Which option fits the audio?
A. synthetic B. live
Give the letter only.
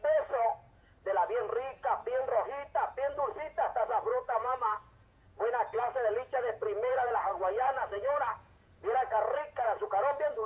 A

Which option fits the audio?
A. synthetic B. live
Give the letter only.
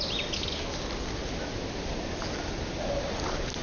B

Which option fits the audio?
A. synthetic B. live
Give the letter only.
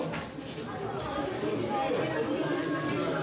B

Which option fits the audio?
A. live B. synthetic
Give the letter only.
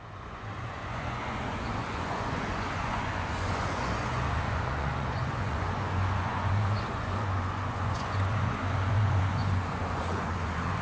B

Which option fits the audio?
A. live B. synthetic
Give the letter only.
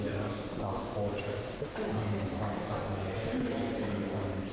A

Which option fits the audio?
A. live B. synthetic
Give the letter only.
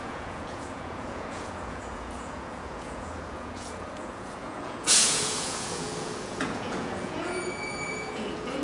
B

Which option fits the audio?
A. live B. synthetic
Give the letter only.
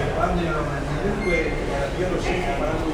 A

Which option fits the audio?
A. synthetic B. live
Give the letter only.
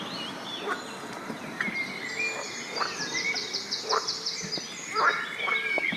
B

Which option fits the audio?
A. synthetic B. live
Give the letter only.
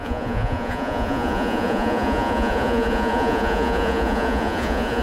A